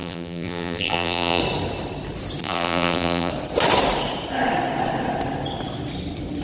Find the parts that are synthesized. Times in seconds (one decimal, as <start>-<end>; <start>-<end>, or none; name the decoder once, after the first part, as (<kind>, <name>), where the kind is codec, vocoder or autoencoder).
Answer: 0.0-1.4 (vocoder, BigVGAN v2); 2.4-3.3